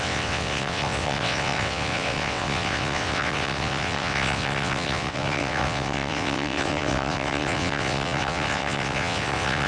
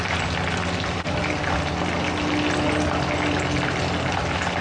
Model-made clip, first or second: first